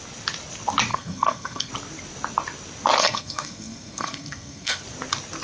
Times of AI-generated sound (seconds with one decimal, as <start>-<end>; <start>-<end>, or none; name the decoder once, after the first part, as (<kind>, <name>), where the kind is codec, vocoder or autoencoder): 0.9-1.7 (codec, SNAC); 3.0-4.8